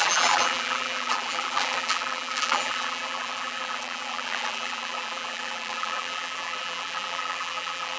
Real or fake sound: fake